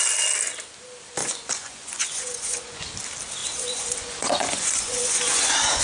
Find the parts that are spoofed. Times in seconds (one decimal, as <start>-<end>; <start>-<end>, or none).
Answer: 1.2-2.9; 3.4-5.8